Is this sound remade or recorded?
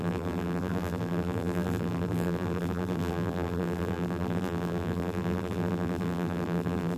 remade